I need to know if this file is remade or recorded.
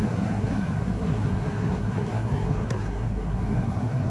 remade